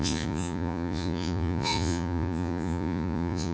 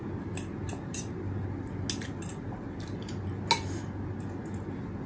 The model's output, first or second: first